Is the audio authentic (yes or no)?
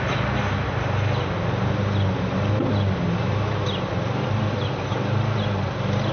yes